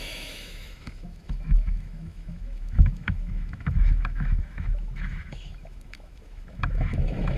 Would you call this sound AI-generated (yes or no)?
yes